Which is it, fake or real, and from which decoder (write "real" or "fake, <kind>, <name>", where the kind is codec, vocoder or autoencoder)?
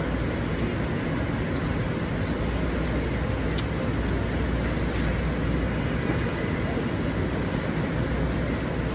real